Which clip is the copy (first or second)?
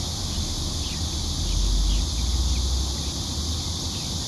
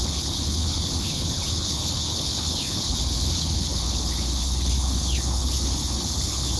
second